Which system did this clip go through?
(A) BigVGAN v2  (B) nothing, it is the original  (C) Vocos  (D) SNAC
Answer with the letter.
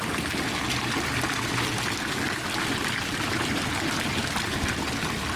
B